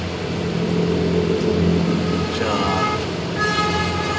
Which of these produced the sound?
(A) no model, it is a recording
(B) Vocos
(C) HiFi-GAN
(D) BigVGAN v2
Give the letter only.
A